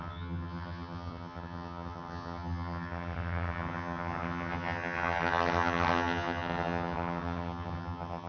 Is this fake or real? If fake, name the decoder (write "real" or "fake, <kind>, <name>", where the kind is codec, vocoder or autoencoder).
fake, vocoder, HiFi-GAN